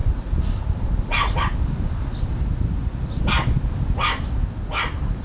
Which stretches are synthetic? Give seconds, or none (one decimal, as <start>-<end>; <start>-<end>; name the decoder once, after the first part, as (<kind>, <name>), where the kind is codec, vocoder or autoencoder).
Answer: none